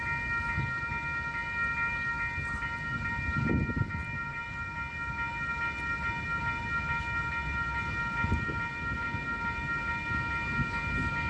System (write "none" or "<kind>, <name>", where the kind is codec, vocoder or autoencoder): none